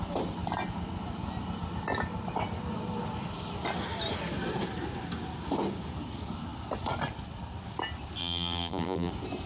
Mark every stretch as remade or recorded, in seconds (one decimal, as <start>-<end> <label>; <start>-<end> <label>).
0.0-8.2 recorded; 8.2-9.1 remade; 9.1-9.5 recorded